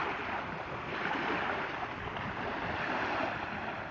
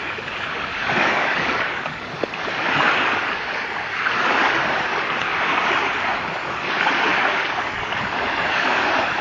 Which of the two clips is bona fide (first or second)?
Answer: first